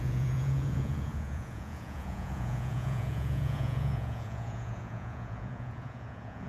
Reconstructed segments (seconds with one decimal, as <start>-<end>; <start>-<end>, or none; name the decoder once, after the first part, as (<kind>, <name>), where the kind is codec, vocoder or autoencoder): 0.0-6.5 (vocoder, Vocos)